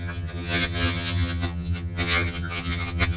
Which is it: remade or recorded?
remade